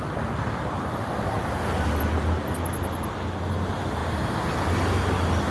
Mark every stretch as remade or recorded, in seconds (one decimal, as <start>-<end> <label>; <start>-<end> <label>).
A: 0.0-5.5 recorded